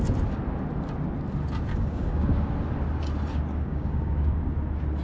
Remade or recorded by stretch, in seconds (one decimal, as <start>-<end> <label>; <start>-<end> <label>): 0.0-1.7 recorded; 1.7-2.5 remade; 2.5-3.5 recorded; 3.5-4.4 remade; 4.4-5.0 recorded